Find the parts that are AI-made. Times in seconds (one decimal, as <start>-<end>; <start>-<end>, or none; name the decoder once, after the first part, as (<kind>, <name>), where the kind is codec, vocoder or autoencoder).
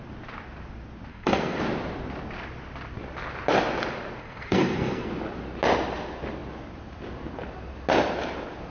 1.1-1.6 (codec, SNAC); 4.2-5.1